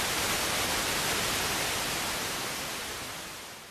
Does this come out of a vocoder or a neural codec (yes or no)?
no